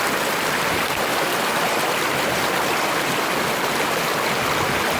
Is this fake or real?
real